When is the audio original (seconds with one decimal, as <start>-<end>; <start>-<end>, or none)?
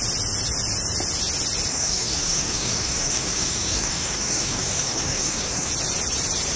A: 0.0-1.7; 5.7-6.6